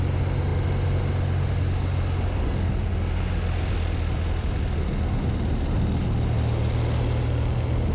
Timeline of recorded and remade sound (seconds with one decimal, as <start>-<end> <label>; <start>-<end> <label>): 0.0-7.9 recorded